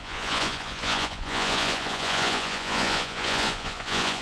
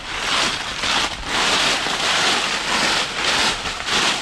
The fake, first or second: first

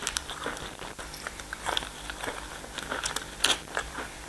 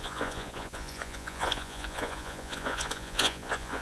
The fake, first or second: second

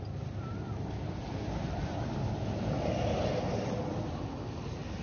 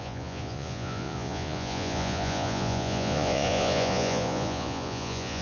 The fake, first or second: second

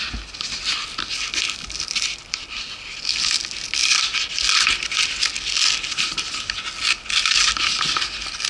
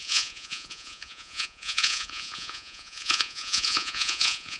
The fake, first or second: second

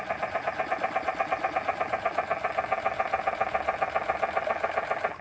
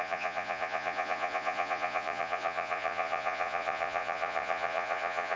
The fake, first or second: second